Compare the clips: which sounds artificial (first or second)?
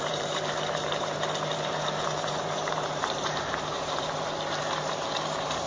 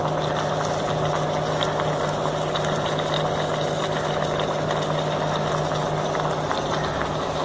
first